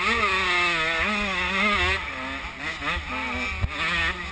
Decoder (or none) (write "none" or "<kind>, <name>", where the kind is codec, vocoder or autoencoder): none